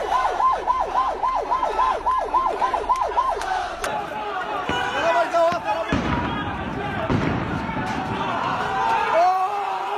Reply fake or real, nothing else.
fake